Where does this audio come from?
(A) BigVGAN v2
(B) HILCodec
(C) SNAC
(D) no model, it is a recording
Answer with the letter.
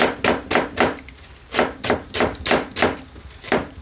D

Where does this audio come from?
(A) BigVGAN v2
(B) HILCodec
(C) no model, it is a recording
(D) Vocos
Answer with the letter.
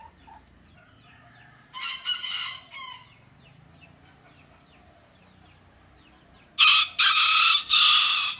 C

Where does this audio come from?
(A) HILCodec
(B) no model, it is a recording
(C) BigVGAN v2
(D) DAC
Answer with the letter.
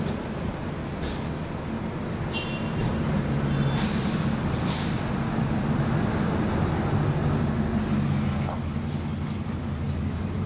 B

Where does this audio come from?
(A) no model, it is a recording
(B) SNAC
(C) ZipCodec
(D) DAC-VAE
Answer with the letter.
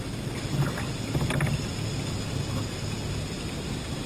A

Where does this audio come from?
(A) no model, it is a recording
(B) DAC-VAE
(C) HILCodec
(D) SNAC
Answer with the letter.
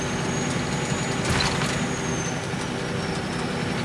A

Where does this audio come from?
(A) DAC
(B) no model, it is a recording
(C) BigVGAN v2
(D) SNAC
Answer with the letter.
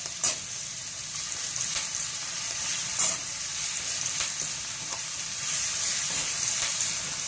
C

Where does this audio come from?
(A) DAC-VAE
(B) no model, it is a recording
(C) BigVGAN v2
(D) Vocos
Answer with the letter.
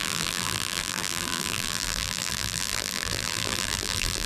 C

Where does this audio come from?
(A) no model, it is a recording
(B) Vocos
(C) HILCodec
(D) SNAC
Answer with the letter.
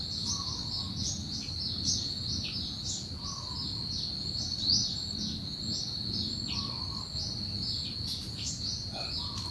A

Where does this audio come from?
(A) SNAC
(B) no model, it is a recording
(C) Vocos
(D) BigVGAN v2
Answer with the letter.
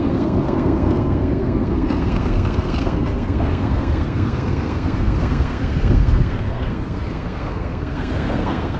A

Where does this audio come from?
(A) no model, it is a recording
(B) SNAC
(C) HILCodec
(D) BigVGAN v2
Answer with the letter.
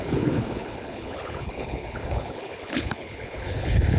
C